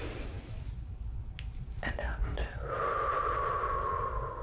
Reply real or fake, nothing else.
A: real